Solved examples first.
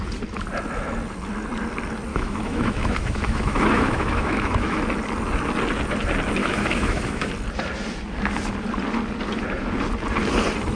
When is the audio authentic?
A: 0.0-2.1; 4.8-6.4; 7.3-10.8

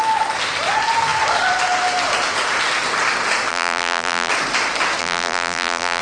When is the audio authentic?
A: 0.0-3.5; 4.3-5.0

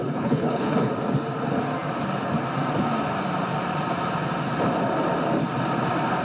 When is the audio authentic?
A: 0.9-6.2

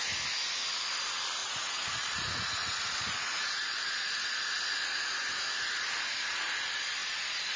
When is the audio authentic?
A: 0.0-1.4; 5.1-7.6